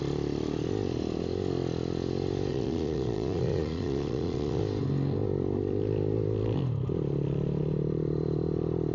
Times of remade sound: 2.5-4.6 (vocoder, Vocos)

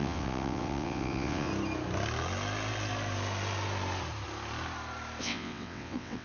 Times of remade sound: 0.0-1.5 (vocoder, WaveNeXt); 5.2-6.2

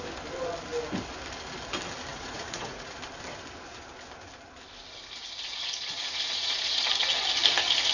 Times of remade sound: 2.1-3.0 (vocoder, Vocos); 6.0-6.8

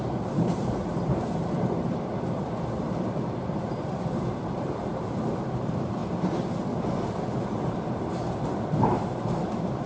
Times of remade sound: 0.0-6.0 (vocoder, BigVGAN v2); 8.1-9.9

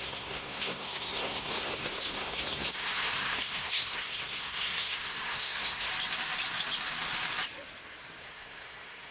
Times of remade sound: 0.0-5.9 (codec, SNAC); 8.2-9.1

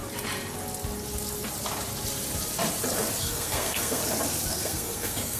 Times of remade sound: 3.2-4.0 (codec, SNAC); 4.5-5.4

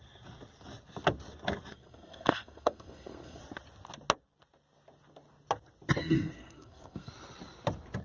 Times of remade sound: 1.7-3.4 (codec, SNAC); 6.0-7.1